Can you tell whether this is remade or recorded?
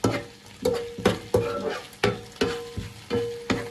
recorded